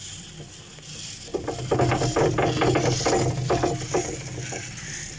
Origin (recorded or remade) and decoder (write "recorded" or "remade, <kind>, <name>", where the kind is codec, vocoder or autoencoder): recorded